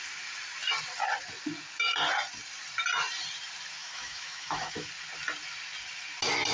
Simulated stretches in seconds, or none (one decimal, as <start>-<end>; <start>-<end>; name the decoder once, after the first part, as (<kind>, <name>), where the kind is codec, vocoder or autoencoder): 3.8-4.9 (autoencoder, DAC-VAE)